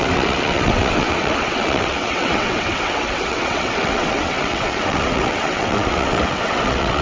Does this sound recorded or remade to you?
remade